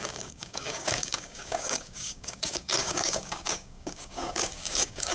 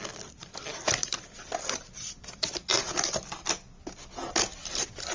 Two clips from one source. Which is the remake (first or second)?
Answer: first